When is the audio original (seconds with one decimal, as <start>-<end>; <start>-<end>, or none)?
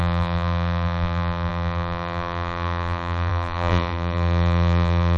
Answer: none